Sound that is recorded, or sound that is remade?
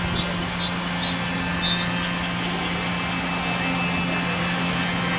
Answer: recorded